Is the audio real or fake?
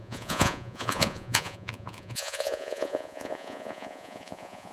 fake